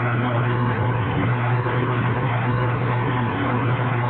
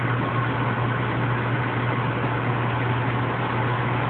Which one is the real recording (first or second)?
second